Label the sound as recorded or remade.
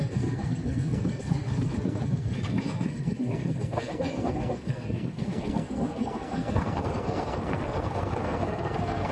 remade